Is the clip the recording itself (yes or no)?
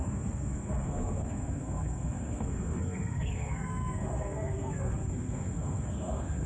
no